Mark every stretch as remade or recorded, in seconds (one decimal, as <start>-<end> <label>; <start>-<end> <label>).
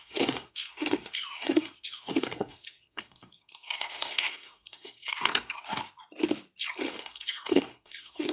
0.0-5.8 remade; 5.8-6.8 recorded; 6.8-8.3 remade